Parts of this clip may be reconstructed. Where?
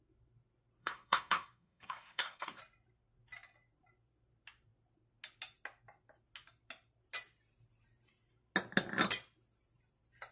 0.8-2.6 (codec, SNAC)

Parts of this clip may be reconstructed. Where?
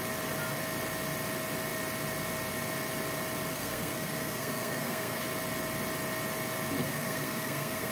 3.5-5.2 (codec, SNAC); 6.8-7.9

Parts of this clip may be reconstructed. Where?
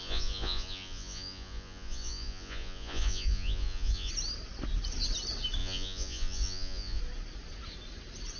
0.0-4.1 (vocoder, Vocos); 5.6-7.0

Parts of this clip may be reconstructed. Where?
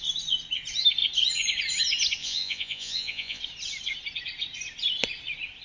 2.2-3.4 (vocoder, Vocos)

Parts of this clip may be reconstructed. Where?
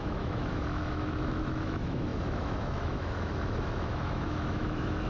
0.0-5.1 (autoencoder, DAC-VAE)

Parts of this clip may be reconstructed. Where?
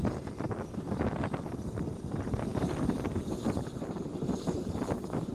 none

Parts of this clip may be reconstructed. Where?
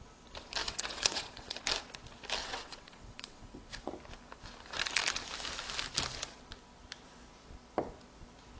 0.6-1.6 (vocoder, WaveNeXt); 2.4-3.9